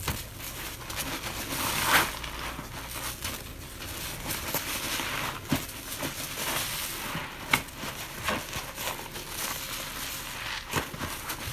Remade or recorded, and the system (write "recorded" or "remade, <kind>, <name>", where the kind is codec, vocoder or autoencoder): recorded